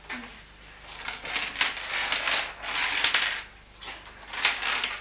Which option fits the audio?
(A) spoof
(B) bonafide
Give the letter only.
B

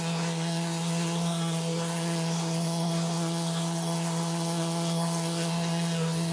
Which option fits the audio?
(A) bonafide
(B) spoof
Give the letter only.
B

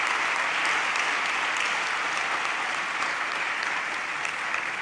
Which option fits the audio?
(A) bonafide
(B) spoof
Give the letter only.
A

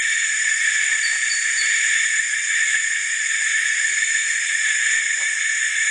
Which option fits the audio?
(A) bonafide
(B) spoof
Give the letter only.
A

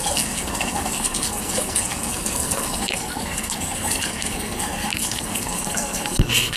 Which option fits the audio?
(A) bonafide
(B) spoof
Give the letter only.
B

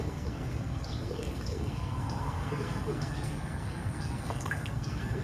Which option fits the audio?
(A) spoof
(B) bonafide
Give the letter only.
A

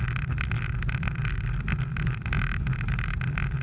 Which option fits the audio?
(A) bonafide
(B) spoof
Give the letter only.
A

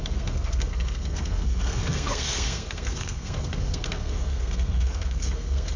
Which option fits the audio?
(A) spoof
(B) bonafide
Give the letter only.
A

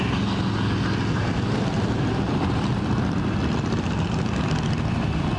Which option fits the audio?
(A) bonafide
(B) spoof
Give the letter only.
A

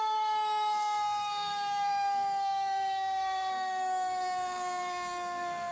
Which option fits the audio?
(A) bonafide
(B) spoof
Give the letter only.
B